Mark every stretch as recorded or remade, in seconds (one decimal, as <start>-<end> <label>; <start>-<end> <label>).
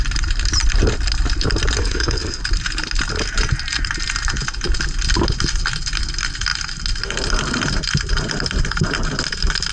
0.0-1.8 recorded; 1.8-2.4 remade; 2.4-9.7 recorded